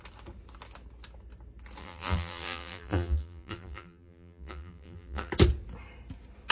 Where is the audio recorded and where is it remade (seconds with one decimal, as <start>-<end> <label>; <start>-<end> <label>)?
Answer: 0.0-1.8 recorded; 1.8-5.3 remade; 5.3-6.5 recorded